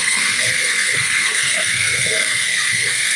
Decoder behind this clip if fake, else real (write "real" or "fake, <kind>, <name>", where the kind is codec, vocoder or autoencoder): fake, codec, SNAC